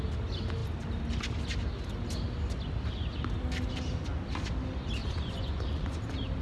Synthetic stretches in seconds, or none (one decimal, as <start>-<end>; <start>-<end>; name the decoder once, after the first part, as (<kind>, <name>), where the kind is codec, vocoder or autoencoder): 5.0-6.0 (vocoder, Vocos)